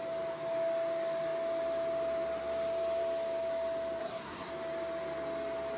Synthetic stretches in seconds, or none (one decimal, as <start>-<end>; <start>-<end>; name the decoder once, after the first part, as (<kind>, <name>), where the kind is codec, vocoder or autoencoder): 4.0-4.5 (codec, SNAC)